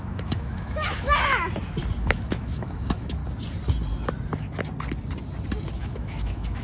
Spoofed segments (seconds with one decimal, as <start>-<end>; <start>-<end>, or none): 0.0-1.3; 2.0-3.2; 5.8-6.6